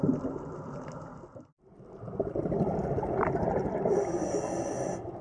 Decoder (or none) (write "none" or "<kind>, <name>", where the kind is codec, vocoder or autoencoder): none